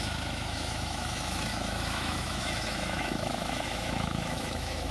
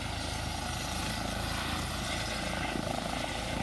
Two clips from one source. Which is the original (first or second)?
second